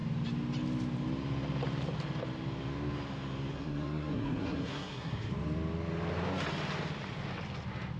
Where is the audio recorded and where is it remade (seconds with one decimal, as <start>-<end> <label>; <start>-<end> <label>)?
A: 0.0-3.5 recorded; 3.5-5.3 remade; 5.3-8.0 recorded

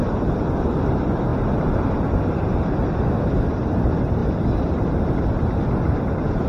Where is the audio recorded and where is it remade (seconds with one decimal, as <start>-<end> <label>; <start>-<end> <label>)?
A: 0.0-6.5 recorded

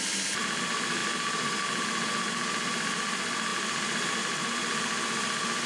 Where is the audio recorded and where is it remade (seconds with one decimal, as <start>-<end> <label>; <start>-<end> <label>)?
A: 0.0-5.7 recorded

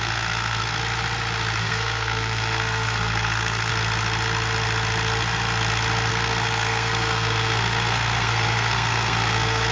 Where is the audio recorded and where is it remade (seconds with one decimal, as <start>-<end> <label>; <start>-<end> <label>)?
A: 0.0-0.8 remade; 0.8-1.6 recorded; 1.6-3.7 remade; 3.7-6.1 recorded; 6.1-9.7 remade

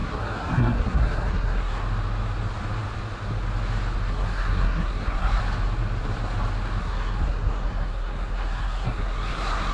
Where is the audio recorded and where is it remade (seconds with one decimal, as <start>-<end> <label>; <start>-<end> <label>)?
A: 0.0-1.8 remade; 1.8-4.1 recorded; 4.1-5.4 remade; 5.4-6.8 recorded; 6.8-9.7 remade

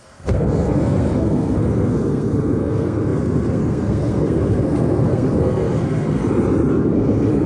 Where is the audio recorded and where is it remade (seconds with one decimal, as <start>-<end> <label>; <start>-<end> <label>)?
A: 0.0-6.2 remade; 6.2-6.7 recorded; 6.7-7.5 remade

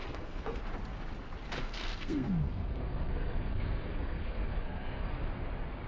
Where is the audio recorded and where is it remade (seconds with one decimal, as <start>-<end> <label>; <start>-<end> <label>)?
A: 0.0-0.6 remade; 0.6-1.6 recorded; 1.6-5.1 remade; 5.1-5.9 recorded

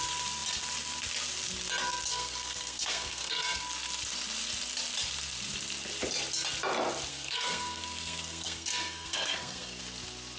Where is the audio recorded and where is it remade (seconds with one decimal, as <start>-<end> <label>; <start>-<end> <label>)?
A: 0.0-2.1 recorded; 2.1-3.6 remade; 3.6-7.1 recorded; 7.1-9.8 remade; 9.8-10.4 recorded